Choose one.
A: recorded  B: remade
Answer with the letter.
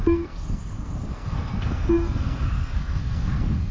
B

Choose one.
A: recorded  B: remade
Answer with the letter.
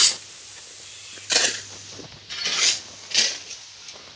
A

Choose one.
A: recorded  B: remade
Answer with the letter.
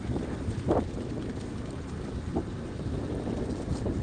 A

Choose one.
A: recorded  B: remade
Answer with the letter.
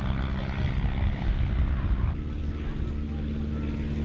A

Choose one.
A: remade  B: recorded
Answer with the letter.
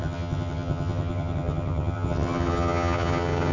A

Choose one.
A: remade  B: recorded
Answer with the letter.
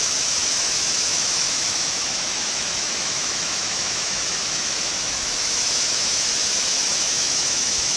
A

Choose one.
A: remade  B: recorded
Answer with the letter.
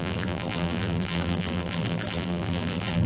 A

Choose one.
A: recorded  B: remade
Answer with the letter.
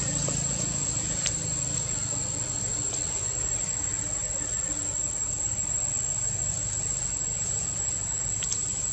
A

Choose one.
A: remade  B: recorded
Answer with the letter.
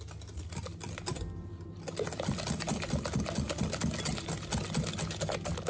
B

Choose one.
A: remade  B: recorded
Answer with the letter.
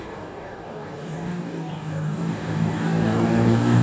A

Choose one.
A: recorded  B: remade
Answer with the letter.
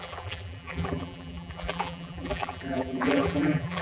B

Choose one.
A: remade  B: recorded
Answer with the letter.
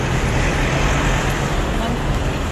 B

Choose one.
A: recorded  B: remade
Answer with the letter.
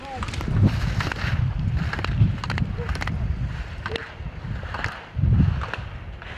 A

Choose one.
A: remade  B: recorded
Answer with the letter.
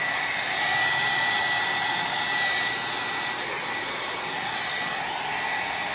B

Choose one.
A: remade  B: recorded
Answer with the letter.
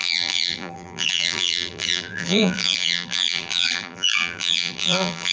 A